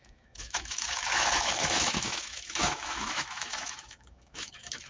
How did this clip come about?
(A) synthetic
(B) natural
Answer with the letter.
A